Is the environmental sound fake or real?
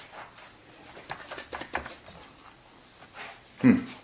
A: real